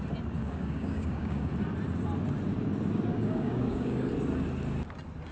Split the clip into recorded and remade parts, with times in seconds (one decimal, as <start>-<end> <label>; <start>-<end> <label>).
0.0-0.4 recorded; 0.4-1.5 remade; 1.5-3.1 recorded; 3.1-4.1 remade; 4.1-5.3 recorded